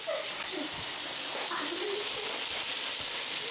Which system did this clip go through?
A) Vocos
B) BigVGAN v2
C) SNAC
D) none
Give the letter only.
D